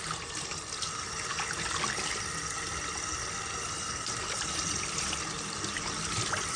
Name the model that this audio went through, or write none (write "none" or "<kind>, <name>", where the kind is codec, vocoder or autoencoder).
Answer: none